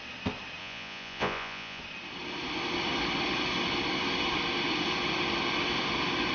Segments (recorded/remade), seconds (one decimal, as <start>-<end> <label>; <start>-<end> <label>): 0.0-0.6 recorded; 0.6-1.8 remade; 1.8-6.3 recorded